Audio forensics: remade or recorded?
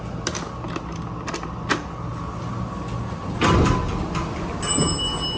recorded